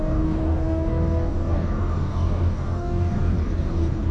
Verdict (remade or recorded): remade